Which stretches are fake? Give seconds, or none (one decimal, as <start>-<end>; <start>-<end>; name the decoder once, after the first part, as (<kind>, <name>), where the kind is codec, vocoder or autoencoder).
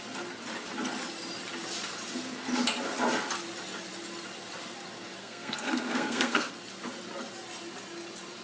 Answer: 5.2-6.5 (codec, SNAC)